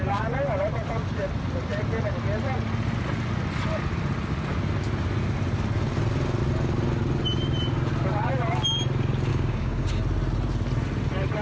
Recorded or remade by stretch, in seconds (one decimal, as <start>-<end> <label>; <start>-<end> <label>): 0.0-9.3 recorded; 9.3-9.9 remade; 9.9-11.4 recorded